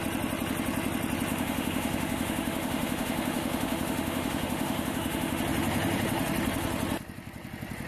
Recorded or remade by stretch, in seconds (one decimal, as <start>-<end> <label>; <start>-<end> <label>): 0.0-1.3 recorded; 1.3-5.4 remade; 5.4-7.9 recorded